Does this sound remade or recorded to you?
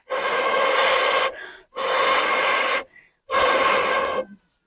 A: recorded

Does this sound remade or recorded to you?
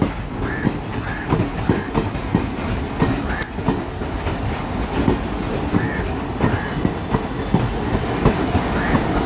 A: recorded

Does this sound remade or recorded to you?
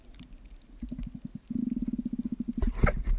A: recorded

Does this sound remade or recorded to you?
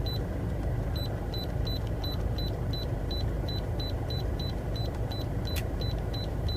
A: remade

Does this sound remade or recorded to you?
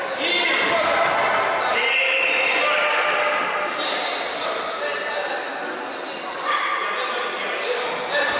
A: recorded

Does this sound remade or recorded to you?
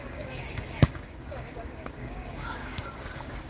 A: remade